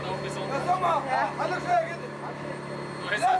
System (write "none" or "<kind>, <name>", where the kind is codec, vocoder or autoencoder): none